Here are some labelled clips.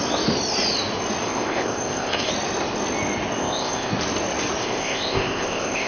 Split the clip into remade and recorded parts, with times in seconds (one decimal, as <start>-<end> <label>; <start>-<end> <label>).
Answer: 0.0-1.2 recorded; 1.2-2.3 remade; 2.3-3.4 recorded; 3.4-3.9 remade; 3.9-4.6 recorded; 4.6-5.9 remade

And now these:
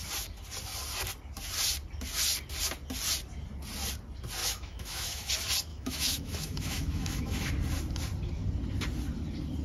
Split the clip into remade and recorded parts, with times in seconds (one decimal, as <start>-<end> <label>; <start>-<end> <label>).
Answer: 0.0-4.4 recorded; 4.4-5.3 remade; 5.3-5.7 recorded; 5.7-7.5 remade; 7.5-9.6 recorded

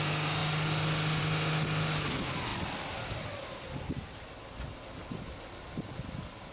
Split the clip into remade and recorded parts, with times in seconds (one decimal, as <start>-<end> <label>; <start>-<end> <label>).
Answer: 0.0-6.5 recorded